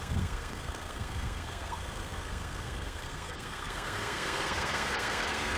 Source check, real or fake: fake